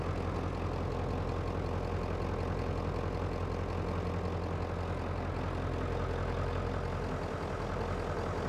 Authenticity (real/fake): real